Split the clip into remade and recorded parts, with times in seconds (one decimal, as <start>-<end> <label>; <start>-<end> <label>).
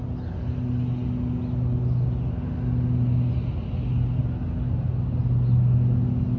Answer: 0.0-6.4 recorded